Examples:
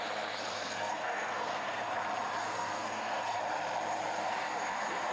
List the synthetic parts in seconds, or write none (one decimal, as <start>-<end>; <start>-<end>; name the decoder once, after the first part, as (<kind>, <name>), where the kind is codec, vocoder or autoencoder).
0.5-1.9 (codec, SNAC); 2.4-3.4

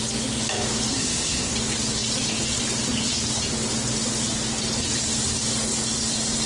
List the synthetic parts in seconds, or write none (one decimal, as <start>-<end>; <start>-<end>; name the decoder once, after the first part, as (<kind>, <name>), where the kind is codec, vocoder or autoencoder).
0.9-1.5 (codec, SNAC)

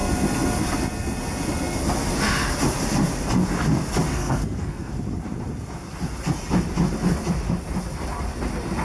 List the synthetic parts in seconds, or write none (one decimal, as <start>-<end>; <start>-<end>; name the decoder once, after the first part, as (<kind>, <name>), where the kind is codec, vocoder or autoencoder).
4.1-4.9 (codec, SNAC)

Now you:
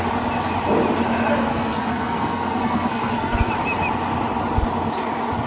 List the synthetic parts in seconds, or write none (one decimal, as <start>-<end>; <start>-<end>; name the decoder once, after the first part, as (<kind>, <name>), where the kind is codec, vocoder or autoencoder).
1.5-3.5 (codec, SNAC)

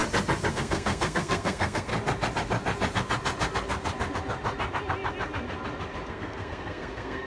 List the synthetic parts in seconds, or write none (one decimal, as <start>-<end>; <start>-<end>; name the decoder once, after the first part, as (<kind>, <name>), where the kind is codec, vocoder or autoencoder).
0.5-1.9 (codec, SNAC); 6.1-7.3

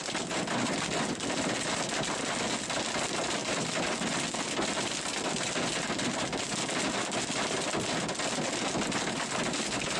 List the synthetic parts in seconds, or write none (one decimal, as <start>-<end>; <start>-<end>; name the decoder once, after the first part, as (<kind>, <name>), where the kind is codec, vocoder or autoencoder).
none

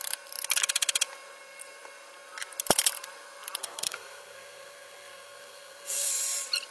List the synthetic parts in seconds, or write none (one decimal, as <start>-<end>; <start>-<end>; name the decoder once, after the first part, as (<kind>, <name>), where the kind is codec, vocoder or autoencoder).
3.6-6.1 (codec, SNAC)

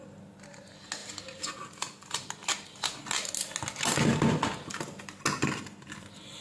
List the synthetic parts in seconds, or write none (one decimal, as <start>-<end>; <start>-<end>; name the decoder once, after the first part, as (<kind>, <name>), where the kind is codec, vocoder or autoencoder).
none